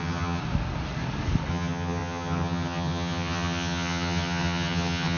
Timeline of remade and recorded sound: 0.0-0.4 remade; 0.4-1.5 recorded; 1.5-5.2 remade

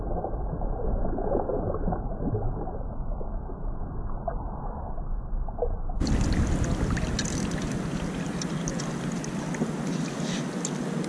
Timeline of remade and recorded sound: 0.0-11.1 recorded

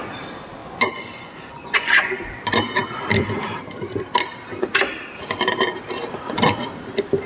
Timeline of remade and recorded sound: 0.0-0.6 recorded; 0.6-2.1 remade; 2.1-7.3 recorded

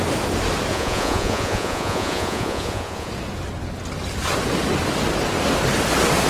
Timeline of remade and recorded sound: 0.0-0.7 recorded; 0.7-3.1 remade; 3.1-6.3 recorded

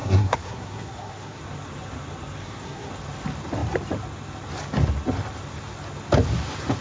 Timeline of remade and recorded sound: 0.0-1.4 remade; 1.4-2.4 recorded; 2.4-2.9 remade; 2.9-6.8 recorded

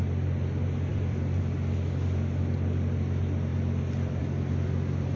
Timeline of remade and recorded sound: 0.0-0.9 recorded; 0.9-1.4 remade; 1.4-3.5 recorded; 3.5-4.2 remade; 4.2-5.2 recorded